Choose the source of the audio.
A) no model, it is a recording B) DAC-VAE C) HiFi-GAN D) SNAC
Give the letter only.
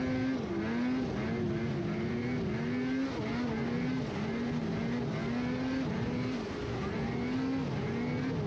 A